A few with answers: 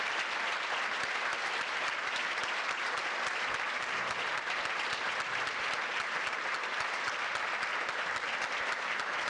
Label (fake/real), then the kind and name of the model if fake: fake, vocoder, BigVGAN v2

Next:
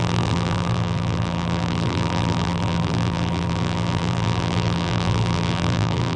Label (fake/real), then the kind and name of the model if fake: fake, vocoder, BigVGAN v2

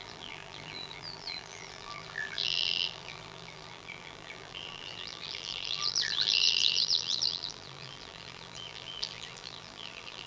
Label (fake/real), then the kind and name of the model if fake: fake, vocoder, BigVGAN v2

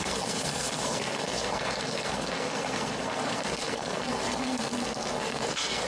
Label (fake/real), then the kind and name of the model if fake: fake, codec, SNAC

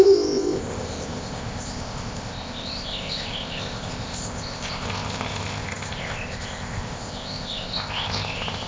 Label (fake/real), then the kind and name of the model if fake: fake, codec, ZipCodec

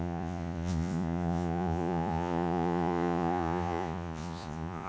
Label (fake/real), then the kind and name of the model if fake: fake, vocoder, Vocos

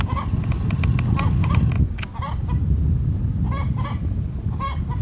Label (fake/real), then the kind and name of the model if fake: real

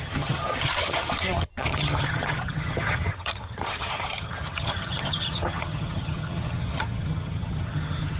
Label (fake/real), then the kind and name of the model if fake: fake, vocoder, HiFi-GAN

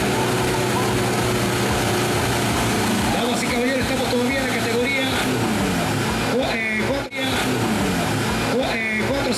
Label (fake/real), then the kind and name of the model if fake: real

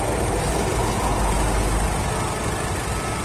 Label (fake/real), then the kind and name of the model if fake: real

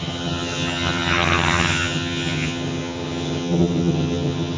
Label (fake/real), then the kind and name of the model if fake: fake, vocoder, HiFi-GAN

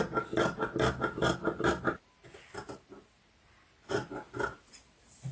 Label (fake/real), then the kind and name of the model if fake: real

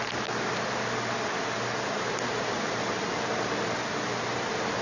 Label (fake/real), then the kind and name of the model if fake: real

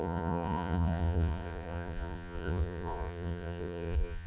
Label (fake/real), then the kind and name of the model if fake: fake, vocoder, Vocos